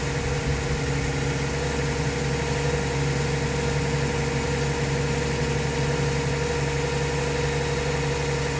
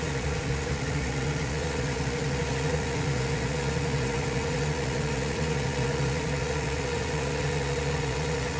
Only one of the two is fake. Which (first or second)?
second